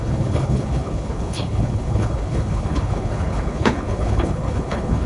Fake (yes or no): yes